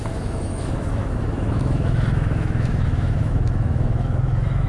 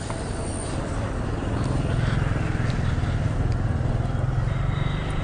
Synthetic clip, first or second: first